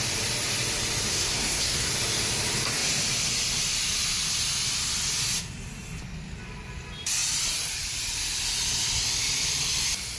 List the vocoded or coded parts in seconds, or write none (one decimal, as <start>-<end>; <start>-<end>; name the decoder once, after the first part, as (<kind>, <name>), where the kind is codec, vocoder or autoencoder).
1.1-1.9 (codec, SNAC)